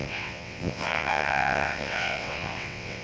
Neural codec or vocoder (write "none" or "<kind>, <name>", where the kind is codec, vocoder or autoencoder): vocoder, WaveNeXt